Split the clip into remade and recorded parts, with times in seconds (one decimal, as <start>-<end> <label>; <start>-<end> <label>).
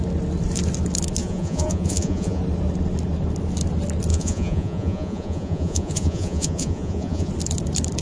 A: 0.0-1.2 recorded; 1.2-2.4 remade; 2.4-4.1 recorded; 4.1-7.3 remade; 7.3-8.0 recorded